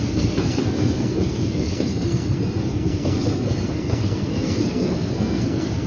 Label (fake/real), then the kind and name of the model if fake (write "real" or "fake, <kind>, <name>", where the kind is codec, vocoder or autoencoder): fake, codec, SNAC